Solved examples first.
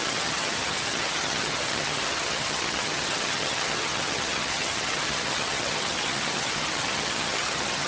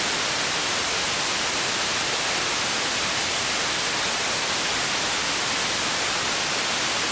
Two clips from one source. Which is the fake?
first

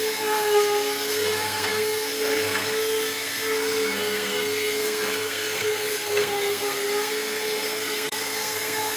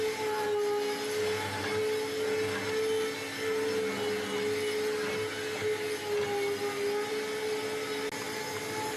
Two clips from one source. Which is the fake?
first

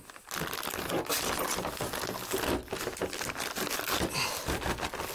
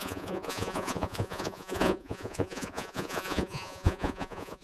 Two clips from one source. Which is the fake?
second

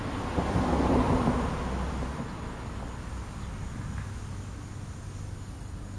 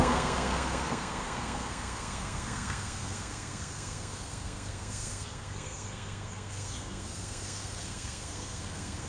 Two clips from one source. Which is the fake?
second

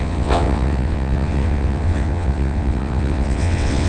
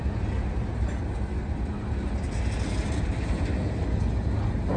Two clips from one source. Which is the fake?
first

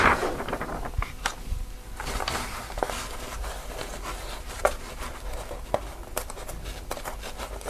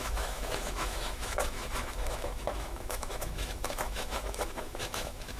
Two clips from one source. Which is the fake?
second